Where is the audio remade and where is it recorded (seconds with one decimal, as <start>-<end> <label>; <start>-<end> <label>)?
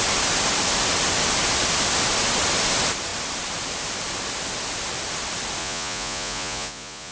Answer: 0.0-5.6 recorded; 5.6-7.1 remade